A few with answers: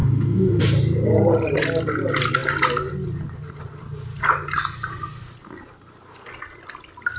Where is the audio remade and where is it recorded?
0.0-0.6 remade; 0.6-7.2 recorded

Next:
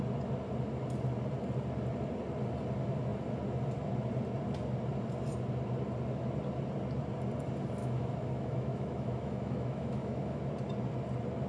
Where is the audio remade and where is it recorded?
0.0-7.8 recorded; 7.8-10.4 remade; 10.4-11.5 recorded

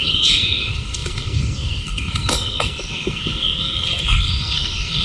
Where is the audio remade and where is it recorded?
0.0-5.0 remade

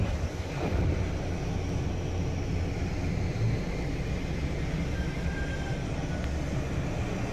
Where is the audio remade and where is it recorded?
0.0-7.3 recorded

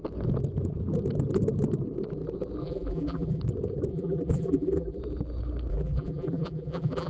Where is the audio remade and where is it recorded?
0.0-2.6 recorded; 2.6-3.4 remade; 3.4-3.9 recorded; 3.9-5.0 remade; 5.0-5.7 recorded; 5.7-7.1 remade

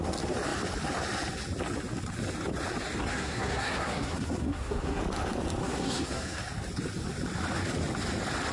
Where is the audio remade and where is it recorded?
0.0-3.1 recorded; 3.1-5.0 remade; 5.0-5.6 recorded; 5.6-6.4 remade; 6.4-8.5 recorded